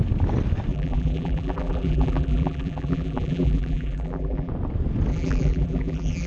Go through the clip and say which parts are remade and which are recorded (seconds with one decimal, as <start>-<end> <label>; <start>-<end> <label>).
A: 0.0-0.7 recorded; 0.7-4.5 remade; 4.5-5.1 recorded; 5.1-6.3 remade